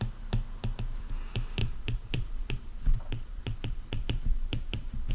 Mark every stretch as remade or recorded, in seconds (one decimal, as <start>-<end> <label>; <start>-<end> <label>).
0.0-1.6 recorded; 1.6-5.1 remade